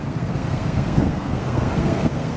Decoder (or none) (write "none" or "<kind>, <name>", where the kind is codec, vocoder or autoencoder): codec, SNAC